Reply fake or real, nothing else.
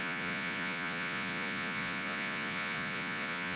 fake